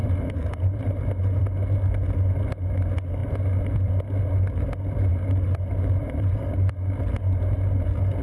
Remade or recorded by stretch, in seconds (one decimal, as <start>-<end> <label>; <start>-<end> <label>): 0.0-1.4 remade; 1.4-5.1 recorded; 5.1-6.7 remade; 6.7-8.2 recorded